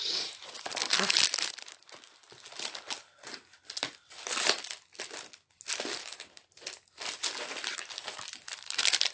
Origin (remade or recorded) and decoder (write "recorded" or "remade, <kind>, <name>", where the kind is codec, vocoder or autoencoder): recorded